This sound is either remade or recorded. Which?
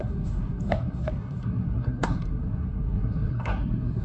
remade